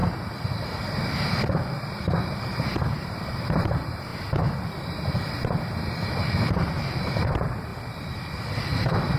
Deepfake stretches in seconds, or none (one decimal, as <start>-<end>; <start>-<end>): 2.2-4.1; 6.2-7.7; 8.7-9.2